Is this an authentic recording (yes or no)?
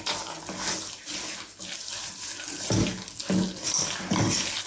yes